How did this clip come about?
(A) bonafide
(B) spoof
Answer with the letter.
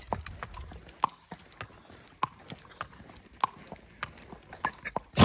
A